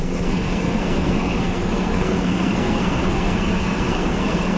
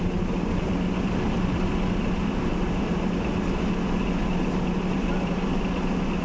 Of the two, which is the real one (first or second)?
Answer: second